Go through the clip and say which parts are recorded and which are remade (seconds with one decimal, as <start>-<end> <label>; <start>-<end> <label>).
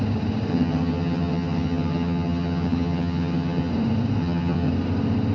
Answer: 0.0-0.5 recorded; 0.5-3.7 remade; 3.7-4.2 recorded; 4.2-4.7 remade; 4.7-5.3 recorded